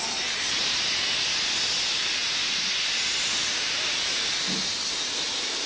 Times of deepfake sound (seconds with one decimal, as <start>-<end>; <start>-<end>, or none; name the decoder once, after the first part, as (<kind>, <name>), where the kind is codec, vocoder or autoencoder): none